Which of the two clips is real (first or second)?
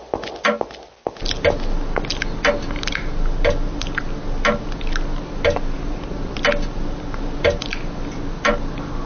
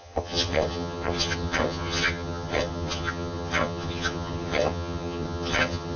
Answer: first